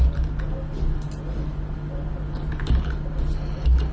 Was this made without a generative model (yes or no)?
yes